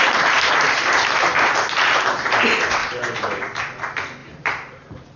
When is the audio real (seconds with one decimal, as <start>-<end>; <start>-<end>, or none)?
0.0-2.8; 3.6-4.2